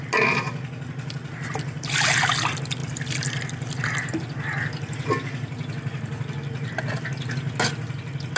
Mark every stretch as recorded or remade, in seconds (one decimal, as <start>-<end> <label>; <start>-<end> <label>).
0.0-2.8 recorded; 2.8-6.8 remade; 6.8-8.4 recorded